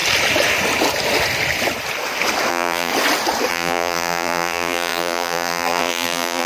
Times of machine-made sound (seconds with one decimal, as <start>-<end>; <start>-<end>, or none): 2.5-2.9; 3.5-6.5